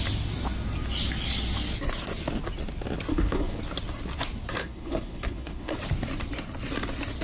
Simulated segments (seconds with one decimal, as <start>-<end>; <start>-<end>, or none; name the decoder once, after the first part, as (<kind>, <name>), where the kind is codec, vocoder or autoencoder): 3.1-3.6 (codec, HILCodec); 4.6-5.8